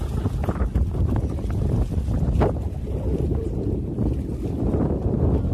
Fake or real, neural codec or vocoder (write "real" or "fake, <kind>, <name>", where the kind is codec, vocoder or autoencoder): real